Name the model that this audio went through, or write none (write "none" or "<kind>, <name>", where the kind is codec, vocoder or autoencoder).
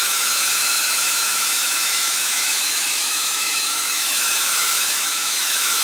autoencoder, DAC-VAE